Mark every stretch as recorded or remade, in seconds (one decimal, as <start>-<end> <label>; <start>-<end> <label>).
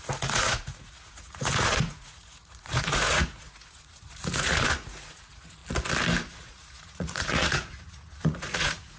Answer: 0.0-5.6 remade; 5.6-6.3 recorded; 6.3-9.0 remade